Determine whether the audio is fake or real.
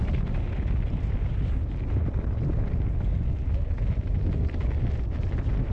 real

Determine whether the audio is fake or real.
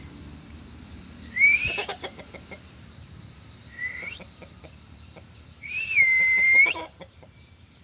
fake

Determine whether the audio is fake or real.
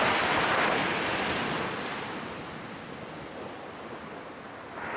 real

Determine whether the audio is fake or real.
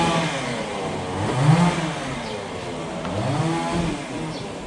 real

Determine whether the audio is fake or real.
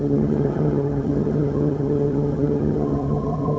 fake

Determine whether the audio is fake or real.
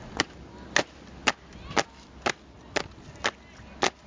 real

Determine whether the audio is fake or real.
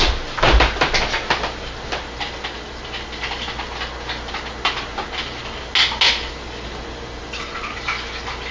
real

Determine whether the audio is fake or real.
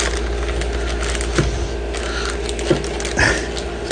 real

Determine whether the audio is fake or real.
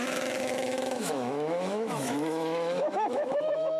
fake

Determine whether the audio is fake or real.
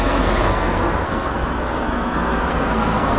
fake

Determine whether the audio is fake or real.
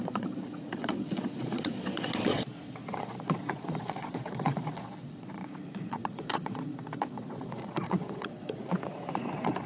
fake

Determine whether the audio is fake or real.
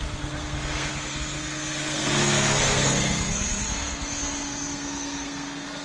fake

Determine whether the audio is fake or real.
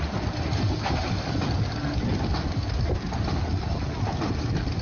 real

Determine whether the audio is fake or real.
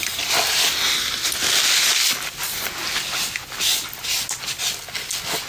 real